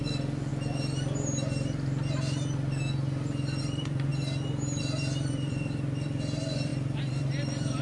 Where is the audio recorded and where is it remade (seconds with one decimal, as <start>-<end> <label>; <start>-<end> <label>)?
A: 0.0-0.5 remade; 0.5-3.6 recorded; 3.6-4.1 remade; 4.1-4.8 recorded; 4.8-7.8 remade